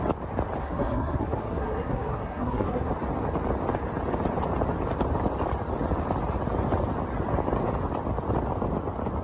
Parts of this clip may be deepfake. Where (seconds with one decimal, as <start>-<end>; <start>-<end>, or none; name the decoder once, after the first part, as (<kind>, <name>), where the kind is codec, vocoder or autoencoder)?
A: 0.6-2.9 (codec, SNAC)

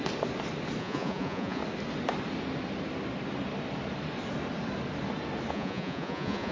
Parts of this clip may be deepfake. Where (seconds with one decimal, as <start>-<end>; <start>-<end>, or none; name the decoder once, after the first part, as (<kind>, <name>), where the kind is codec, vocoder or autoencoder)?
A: 0.8-1.6 (vocoder, Vocos); 5.5-6.5

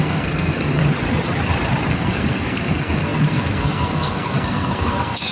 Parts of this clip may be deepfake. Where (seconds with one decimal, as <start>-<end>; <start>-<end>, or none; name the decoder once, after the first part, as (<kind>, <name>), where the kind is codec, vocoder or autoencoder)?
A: 0.0-0.8 (codec, SNAC); 1.9-5.3

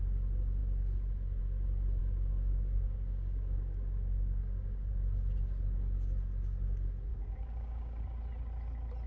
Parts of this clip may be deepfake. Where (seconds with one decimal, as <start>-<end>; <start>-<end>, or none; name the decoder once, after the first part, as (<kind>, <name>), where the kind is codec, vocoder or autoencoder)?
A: 2.0-4.9 (codec, DAC); 7.1-8.0

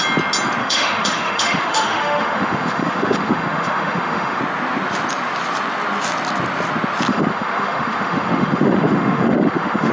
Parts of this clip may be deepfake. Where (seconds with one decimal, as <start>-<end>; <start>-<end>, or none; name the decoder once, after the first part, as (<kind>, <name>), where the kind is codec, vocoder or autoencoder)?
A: 0.6-4.4 (autoencoder, DAC-VAE); 7.1-9.9

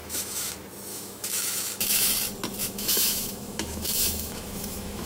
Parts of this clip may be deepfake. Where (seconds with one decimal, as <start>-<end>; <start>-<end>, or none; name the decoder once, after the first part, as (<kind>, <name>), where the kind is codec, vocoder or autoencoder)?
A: 0.0-0.5 (autoencoder, DAC-VAE); 0.9-2.1; 2.6-5.1